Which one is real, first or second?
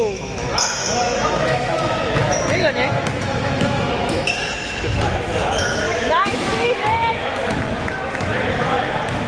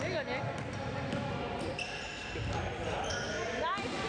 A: second